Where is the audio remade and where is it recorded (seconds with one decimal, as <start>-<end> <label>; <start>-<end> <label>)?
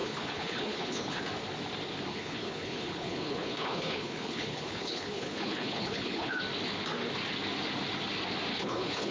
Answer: 0.0-1.2 remade; 1.2-2.1 recorded; 2.1-6.4 remade; 6.4-8.5 recorded; 8.5-9.1 remade